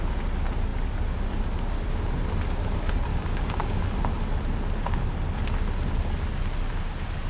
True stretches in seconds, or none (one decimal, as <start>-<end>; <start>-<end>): 0.0-3.1; 3.8-7.3